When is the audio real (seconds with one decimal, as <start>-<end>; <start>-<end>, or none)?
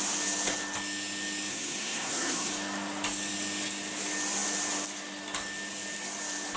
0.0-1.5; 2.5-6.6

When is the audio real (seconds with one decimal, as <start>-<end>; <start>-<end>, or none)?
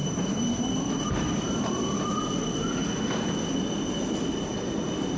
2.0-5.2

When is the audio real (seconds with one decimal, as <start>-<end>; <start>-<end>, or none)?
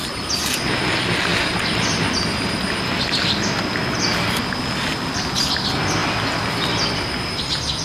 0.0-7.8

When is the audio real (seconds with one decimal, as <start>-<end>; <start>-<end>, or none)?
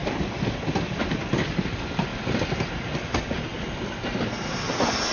0.0-5.1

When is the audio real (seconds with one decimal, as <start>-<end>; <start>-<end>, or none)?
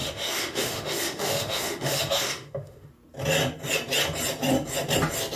2.9-5.4